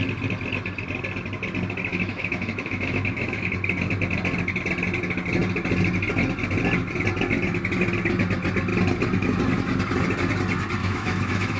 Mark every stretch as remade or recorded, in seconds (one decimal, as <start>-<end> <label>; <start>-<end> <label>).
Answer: 0.0-1.9 recorded; 1.9-3.5 remade; 3.5-10.8 recorded; 10.8-11.6 remade